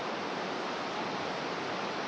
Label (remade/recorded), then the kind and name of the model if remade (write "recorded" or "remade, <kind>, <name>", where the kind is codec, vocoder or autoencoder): recorded